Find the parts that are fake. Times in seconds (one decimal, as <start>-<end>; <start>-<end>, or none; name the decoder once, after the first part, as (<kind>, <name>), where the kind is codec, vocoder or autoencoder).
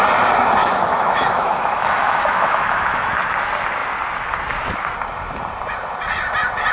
0.6-3.1 (autoencoder, DAC-VAE)